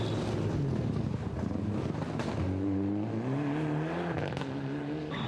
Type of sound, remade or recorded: recorded